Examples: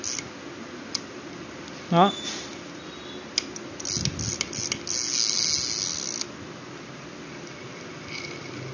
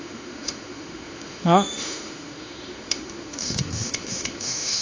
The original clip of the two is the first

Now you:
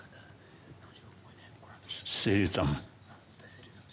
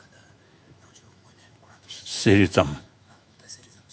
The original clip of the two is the first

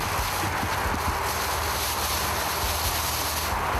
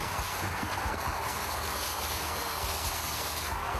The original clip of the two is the first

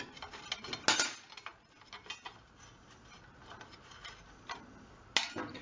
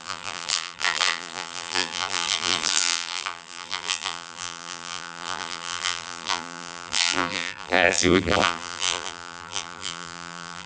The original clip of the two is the first